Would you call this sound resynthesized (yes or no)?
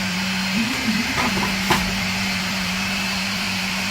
yes